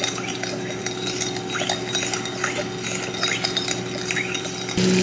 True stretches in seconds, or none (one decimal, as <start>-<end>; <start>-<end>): 0.0-5.0